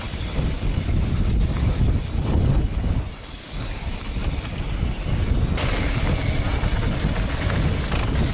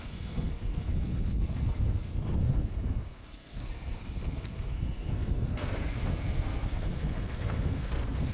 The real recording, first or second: first